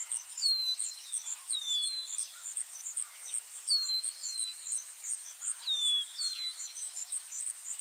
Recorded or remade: remade